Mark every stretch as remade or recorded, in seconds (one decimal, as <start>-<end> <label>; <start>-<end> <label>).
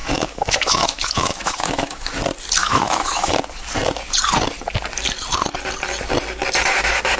0.0-2.1 remade; 2.1-2.6 recorded; 2.6-3.3 remade; 3.3-7.2 recorded